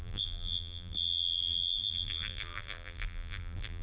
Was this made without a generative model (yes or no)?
no